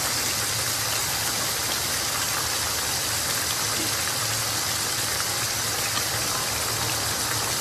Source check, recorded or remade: recorded